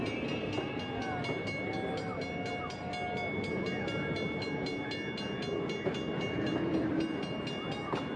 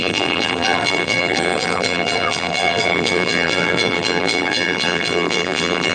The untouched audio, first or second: first